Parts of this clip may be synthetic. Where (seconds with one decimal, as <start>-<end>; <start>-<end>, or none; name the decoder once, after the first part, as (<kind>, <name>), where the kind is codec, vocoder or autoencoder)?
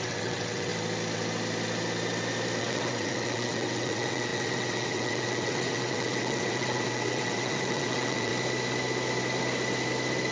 0.0-0.7 (vocoder, WaveNeXt); 2.6-8.3